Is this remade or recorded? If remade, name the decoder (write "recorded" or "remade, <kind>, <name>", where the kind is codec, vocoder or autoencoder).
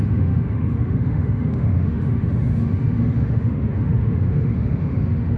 remade, autoencoder, DAC-VAE